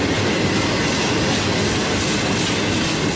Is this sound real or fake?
real